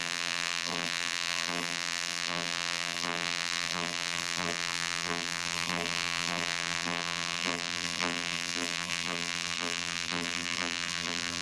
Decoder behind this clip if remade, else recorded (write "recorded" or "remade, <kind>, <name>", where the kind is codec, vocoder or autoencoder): remade, vocoder, BigVGAN v2